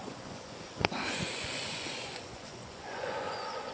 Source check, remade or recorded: remade